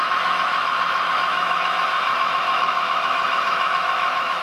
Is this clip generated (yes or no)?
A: yes